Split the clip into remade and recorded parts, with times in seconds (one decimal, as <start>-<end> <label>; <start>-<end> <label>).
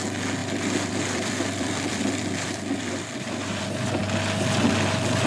0.0-0.4 recorded; 0.4-3.6 remade; 3.6-5.3 recorded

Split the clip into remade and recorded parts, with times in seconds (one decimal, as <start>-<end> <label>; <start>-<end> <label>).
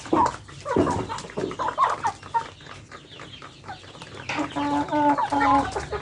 0.0-6.0 recorded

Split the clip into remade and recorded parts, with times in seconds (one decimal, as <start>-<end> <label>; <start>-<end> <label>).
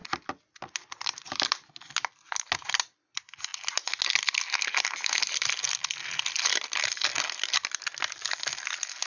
0.0-1.7 remade; 1.7-9.1 recorded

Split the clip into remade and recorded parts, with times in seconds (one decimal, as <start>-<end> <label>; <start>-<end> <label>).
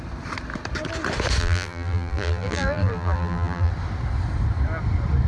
0.0-1.4 recorded; 1.4-3.7 remade; 3.7-5.3 recorded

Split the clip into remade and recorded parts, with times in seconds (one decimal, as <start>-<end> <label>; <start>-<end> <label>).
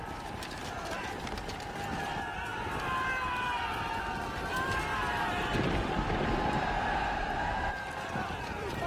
0.0-2.5 remade; 2.5-5.4 recorded; 5.4-8.9 remade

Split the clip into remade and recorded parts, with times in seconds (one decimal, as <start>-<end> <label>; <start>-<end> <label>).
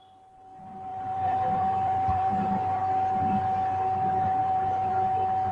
0.0-0.9 recorded; 0.9-2.8 remade; 2.8-4.4 recorded; 4.4-4.9 remade; 4.9-5.5 recorded